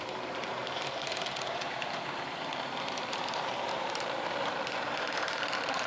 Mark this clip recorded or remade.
remade